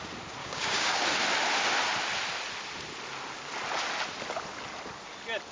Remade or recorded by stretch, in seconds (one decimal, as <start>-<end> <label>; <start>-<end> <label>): 0.0-0.4 recorded; 0.4-1.0 remade; 1.0-5.5 recorded